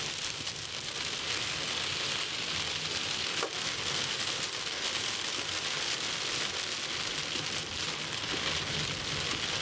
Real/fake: real